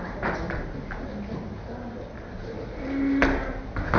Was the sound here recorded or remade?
recorded